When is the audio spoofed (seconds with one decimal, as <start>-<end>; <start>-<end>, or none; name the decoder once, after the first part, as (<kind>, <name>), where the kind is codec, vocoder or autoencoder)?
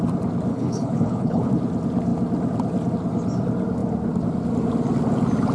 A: 0.5-1.5 (codec, HILCodec)